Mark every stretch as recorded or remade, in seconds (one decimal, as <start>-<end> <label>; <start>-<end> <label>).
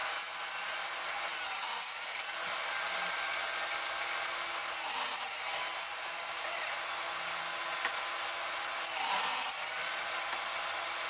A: 0.0-11.1 recorded